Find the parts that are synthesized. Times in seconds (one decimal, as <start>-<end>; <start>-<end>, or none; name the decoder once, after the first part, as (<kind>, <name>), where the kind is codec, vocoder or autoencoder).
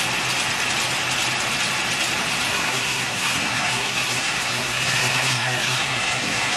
2.5-6.6 (codec, SNAC)